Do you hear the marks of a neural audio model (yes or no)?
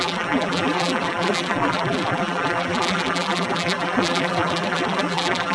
yes